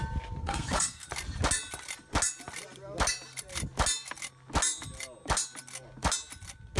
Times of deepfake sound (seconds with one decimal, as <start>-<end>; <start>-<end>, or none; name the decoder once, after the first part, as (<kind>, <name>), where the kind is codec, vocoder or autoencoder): 0.4-1.1 (codec, SNAC)